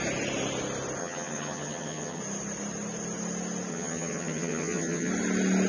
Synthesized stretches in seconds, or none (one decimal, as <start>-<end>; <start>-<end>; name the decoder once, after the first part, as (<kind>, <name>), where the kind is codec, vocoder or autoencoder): 1.0-2.2 (vocoder, HiFi-GAN); 3.7-5.1